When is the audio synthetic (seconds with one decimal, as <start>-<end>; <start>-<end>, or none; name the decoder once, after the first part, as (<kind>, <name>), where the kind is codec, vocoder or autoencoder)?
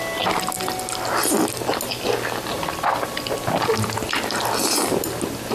2.5-4.2 (vocoder, BigVGAN v2)